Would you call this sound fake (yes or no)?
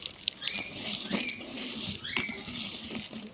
no